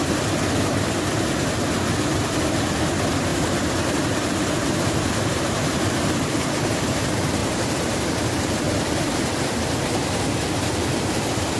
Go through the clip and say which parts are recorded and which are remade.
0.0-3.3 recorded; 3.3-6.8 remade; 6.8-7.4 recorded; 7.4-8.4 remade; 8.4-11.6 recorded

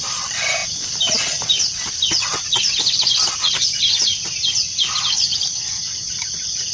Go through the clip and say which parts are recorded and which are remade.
0.0-6.7 recorded